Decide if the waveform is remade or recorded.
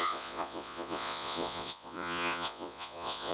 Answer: remade